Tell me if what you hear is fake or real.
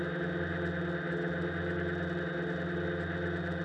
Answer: real